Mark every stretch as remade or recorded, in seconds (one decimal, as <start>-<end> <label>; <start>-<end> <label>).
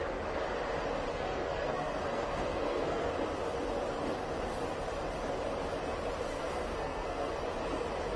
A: 0.0-1.1 recorded; 1.1-3.1 remade; 3.1-6.3 recorded; 6.3-7.4 remade; 7.4-8.2 recorded